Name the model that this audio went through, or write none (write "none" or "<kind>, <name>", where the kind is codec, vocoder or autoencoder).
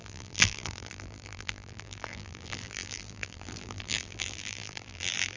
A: vocoder, BigVGAN v2